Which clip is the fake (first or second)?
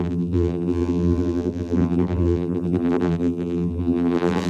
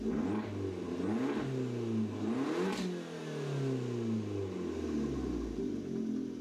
first